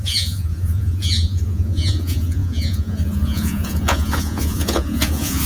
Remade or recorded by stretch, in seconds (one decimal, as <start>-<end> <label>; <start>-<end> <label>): 0.0-5.5 remade